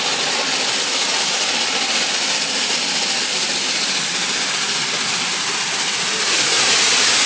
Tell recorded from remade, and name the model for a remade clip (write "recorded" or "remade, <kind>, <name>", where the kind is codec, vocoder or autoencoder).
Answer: recorded